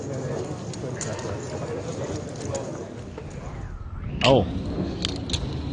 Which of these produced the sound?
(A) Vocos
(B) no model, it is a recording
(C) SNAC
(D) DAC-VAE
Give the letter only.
B